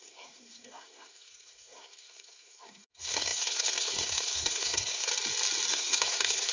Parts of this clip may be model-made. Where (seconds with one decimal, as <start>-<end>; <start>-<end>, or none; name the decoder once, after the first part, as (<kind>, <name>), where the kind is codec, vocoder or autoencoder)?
0.0-5.1 (codec, SNAC); 5.7-6.5